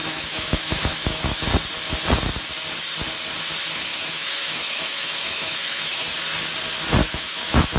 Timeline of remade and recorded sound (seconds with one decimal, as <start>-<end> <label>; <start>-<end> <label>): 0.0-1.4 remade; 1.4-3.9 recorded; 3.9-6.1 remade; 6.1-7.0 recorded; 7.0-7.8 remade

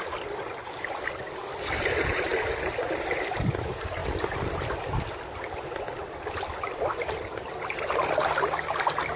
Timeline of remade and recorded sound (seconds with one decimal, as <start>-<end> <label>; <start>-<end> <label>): 0.0-9.2 recorded

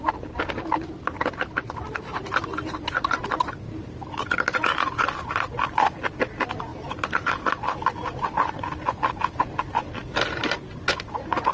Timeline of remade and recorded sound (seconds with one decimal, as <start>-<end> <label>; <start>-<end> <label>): 0.0-11.5 recorded

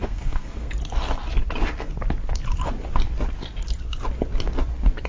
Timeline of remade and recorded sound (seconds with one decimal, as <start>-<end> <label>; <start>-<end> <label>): 0.0-0.7 remade; 0.7-5.1 recorded

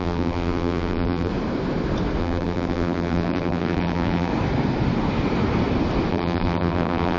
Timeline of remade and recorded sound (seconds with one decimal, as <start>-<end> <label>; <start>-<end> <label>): 0.0-1.3 remade; 1.3-2.2 recorded; 2.2-4.3 remade; 4.3-6.1 recorded; 6.1-7.2 remade